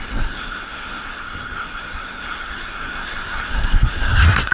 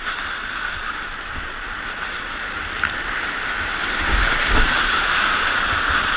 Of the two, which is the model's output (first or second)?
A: first